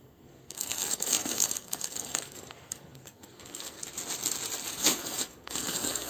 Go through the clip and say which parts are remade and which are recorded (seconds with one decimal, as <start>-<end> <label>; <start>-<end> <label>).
0.0-3.8 remade; 3.8-4.7 recorded; 4.7-6.1 remade